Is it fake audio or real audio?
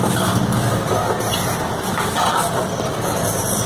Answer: real